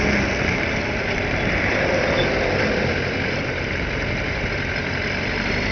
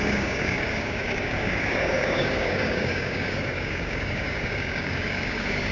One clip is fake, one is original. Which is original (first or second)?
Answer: first